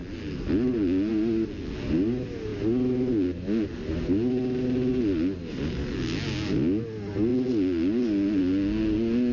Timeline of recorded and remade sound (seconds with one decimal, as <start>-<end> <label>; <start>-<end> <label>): 0.0-9.3 recorded